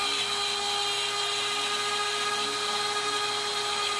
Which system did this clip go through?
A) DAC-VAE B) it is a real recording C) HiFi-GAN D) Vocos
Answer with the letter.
B